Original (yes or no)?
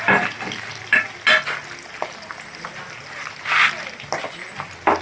yes